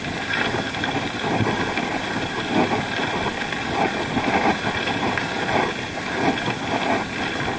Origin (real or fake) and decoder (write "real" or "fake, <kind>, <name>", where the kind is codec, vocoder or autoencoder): real